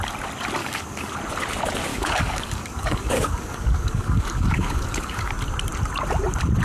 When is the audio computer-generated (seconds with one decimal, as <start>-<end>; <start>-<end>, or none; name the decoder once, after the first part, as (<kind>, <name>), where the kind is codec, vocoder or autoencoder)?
0.6-1.1 (codec, DAC); 1.9-5.3